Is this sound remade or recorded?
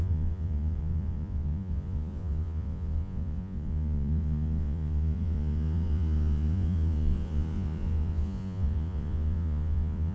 remade